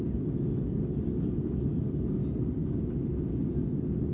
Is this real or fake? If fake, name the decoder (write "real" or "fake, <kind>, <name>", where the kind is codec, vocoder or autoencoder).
real